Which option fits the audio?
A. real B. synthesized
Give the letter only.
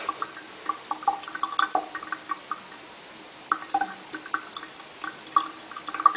A